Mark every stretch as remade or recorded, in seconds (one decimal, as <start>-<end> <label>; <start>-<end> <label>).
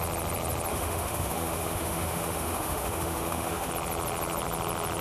0.0-0.7 recorded; 0.7-3.7 remade; 3.7-5.0 recorded